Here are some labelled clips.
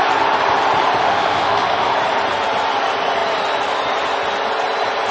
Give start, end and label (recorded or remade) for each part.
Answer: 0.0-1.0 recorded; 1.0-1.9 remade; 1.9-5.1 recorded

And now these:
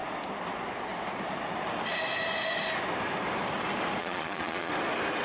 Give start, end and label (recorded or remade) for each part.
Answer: 0.0-4.0 recorded; 4.0-4.7 remade; 4.7-5.2 recorded

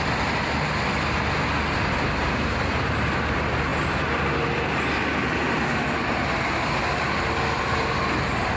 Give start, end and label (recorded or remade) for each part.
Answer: 0.0-8.6 recorded

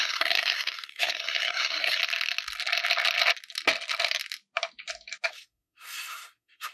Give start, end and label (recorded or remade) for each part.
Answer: 0.0-2.0 remade; 2.0-5.3 recorded; 5.3-6.7 remade

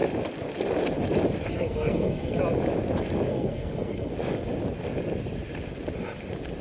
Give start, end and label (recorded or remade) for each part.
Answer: 0.0-1.5 recorded; 1.5-2.4 remade; 2.4-3.3 recorded; 3.3-4.1 remade; 4.1-6.6 recorded